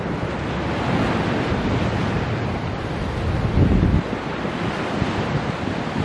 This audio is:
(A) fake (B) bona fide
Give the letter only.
B